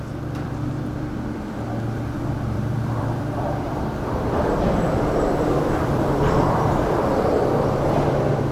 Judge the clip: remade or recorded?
remade